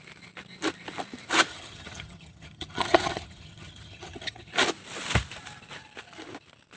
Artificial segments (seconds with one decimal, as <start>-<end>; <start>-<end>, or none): 1.5-4.5